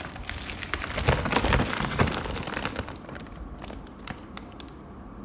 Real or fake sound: real